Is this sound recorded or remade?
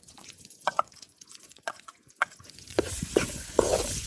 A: remade